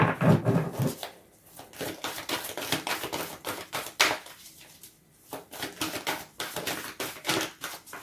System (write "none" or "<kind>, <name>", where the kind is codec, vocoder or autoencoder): none